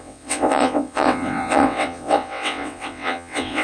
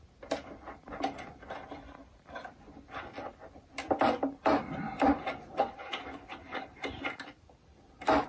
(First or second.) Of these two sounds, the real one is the second